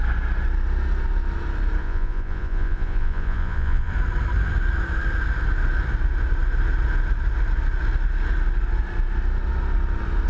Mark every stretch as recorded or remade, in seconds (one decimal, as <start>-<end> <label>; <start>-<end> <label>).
0.0-1.8 recorded; 1.8-3.9 remade; 3.9-10.3 recorded